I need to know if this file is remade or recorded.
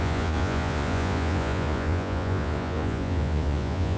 remade